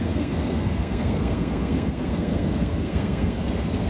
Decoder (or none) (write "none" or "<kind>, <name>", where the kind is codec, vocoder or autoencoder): codec, SNAC